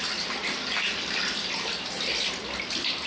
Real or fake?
real